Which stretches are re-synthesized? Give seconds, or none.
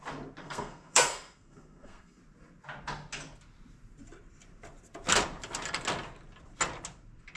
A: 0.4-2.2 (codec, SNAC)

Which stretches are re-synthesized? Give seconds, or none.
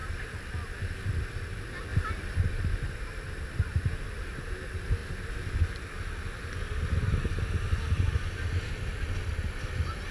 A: none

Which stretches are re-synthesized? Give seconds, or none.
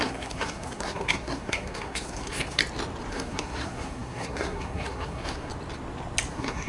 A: 0.0-2.6 (codec, SNAC); 3.1-5.5; 6.3-6.7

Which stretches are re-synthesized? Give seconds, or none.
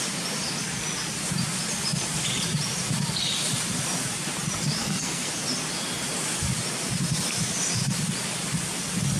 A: 4.8-5.3 (codec, SNAC)